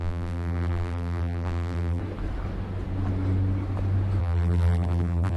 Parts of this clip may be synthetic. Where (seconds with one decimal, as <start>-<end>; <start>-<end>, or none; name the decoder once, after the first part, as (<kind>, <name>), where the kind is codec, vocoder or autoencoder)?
0.0-2.0 (vocoder, BigVGAN v2); 4.2-5.4